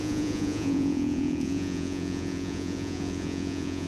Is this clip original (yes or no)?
no